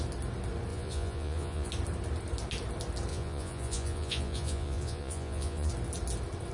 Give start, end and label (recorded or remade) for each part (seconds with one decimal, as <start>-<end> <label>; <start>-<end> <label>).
0.0-0.7 recorded; 0.7-1.7 remade; 1.7-3.1 recorded; 3.1-5.7 remade; 5.7-6.5 recorded